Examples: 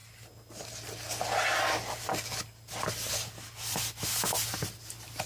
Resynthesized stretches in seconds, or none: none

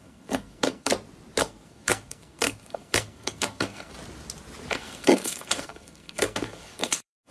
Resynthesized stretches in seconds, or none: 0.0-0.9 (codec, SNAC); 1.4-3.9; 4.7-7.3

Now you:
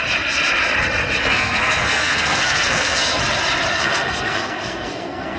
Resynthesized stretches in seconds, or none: 1.2-3.2 (codec, SNAC); 3.7-5.4

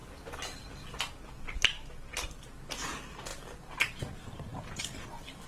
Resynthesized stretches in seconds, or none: none

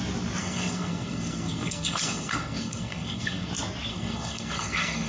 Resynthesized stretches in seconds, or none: 0.4-3.5 (codec, SNAC); 3.9-5.1